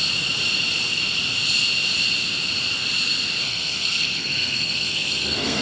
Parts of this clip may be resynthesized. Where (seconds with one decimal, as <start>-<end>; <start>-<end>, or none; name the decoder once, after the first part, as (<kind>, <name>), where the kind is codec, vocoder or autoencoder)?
3.4-5.6 (codec, SNAC)